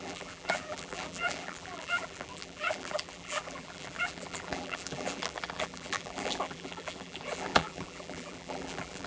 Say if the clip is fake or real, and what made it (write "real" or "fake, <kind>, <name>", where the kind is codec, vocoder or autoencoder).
fake, vocoder, BigVGAN v2